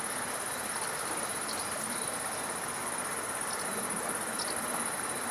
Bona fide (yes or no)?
yes